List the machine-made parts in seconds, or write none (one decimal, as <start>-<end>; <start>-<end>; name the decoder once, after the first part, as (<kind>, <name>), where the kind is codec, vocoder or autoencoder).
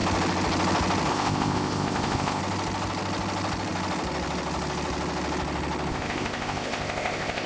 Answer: 1.1-2.4 (codec, ZipCodec); 5.9-7.5